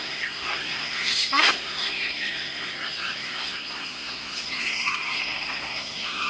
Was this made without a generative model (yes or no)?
no